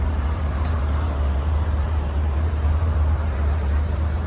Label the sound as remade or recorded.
remade